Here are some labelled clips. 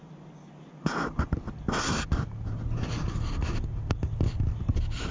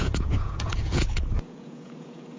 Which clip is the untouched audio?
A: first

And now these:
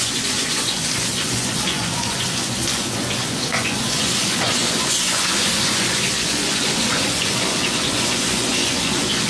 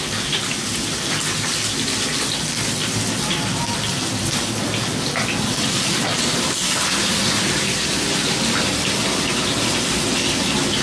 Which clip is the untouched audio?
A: second